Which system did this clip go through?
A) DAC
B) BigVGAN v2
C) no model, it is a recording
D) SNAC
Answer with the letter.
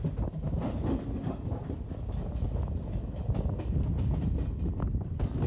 C